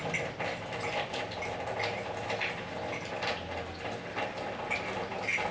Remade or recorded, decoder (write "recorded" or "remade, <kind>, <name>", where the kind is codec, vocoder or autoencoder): recorded